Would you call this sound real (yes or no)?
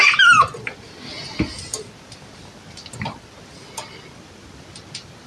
yes